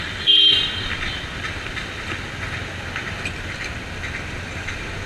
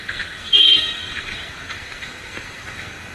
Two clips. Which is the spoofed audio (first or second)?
second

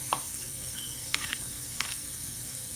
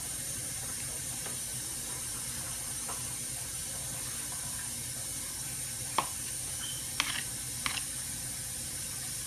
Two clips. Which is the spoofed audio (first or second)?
first